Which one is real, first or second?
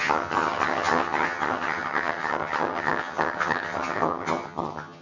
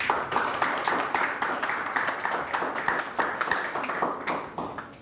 second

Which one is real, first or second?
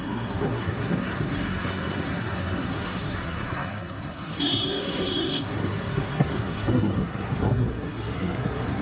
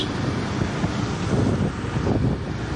second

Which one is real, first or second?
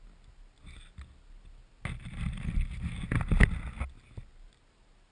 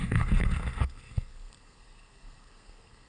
first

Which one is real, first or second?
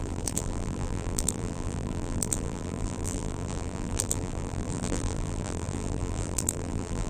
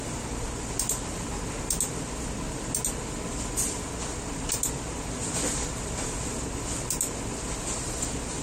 second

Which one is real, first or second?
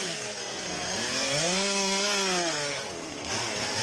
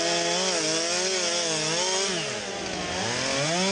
second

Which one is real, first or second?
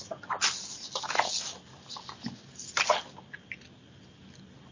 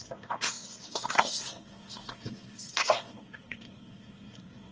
first